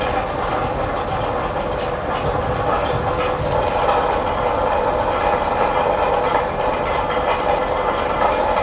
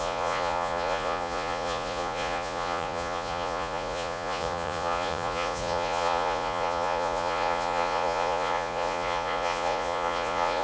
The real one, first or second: first